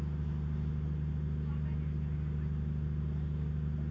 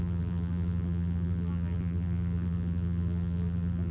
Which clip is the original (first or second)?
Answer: first